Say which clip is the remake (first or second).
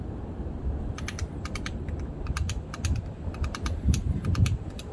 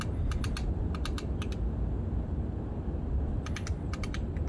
first